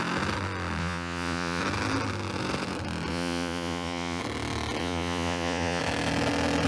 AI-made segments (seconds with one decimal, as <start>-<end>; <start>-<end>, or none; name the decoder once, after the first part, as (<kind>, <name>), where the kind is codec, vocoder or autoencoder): 0.8-1.6 (vocoder, Vocos); 3.1-4.2; 4.8-5.8